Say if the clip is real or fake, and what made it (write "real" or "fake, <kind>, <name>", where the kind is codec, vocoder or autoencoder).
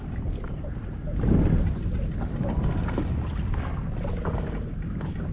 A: real